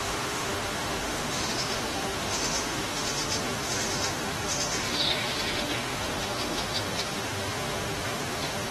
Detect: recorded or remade remade